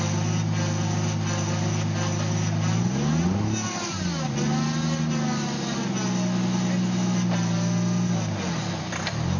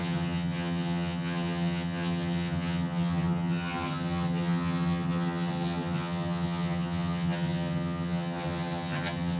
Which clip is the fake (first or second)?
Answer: second